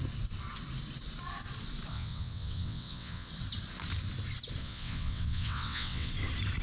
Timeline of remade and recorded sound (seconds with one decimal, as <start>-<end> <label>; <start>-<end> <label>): 0.0-1.9 recorded; 1.9-3.3 remade; 3.3-4.6 recorded; 4.6-6.1 remade; 6.1-6.6 recorded